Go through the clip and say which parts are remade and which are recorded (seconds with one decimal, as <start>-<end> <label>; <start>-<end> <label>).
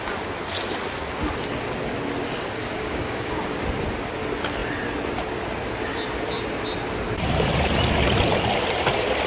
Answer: 0.0-2.6 recorded; 2.6-3.4 remade; 3.4-9.3 recorded